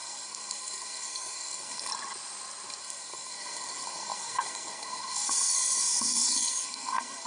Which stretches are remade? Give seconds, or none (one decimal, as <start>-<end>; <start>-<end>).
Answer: 0.0-1.9; 2.8-7.3